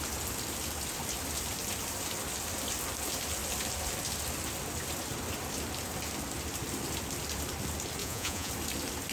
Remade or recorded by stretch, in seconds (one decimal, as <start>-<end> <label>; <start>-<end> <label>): 0.0-8.0 recorded; 8.0-8.5 remade; 8.5-9.1 recorded

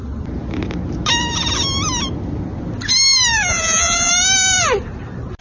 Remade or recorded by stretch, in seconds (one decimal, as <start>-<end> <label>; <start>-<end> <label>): 0.0-3.5 recorded; 3.5-4.1 remade; 4.1-5.4 recorded

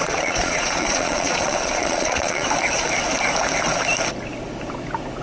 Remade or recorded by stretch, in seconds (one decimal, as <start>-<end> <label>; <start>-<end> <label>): 0.0-2.5 remade; 2.5-5.2 recorded

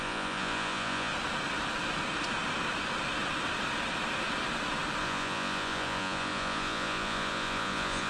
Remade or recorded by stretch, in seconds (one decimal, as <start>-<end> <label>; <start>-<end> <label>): 0.0-1.1 remade; 1.1-5.0 recorded; 5.0-8.1 remade